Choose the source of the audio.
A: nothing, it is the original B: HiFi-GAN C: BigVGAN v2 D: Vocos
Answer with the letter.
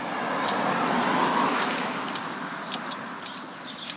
A